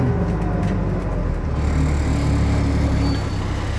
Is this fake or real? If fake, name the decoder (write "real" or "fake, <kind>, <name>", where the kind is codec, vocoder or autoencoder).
real